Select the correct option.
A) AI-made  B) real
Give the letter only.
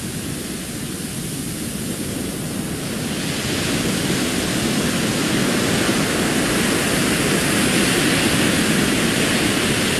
B